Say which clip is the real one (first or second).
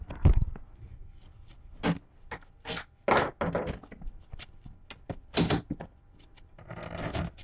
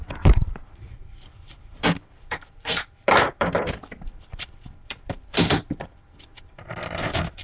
first